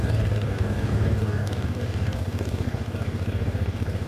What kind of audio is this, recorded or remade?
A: remade